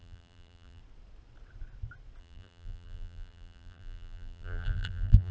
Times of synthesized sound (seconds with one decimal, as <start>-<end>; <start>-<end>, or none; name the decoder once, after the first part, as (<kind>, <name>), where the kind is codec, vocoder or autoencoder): 0.0-0.8 (vocoder, BigVGAN v2); 2.2-5.3